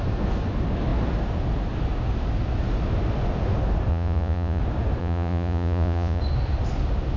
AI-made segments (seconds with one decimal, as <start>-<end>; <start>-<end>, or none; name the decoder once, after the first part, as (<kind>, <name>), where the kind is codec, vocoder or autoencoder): 3.9-4.6 (vocoder, Vocos); 5.0-6.2